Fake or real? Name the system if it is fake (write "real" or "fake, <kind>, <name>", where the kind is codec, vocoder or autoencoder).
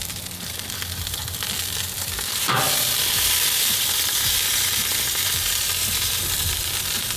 fake, vocoder, BigVGAN v2